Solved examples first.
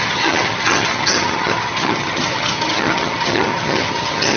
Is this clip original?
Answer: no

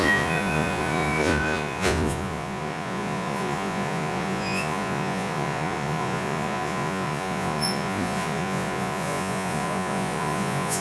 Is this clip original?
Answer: no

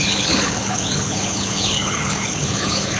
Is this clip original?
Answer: no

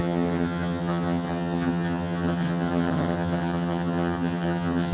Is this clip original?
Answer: no